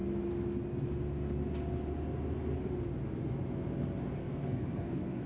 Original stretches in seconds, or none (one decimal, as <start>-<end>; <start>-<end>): 0.0-4.2

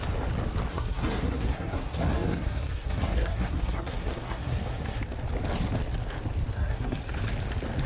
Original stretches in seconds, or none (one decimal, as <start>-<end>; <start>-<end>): 0.0-0.7; 5.0-6.5; 7.0-7.9

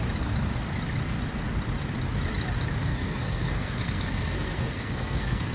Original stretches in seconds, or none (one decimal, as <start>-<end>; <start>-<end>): 0.0-2.8

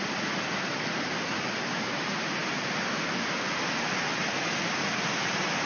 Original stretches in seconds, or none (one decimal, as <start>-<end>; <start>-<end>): 0.0-5.7

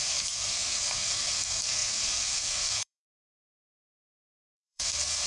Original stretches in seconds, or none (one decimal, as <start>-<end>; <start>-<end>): none